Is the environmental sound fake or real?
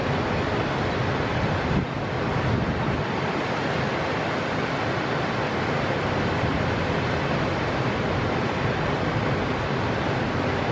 real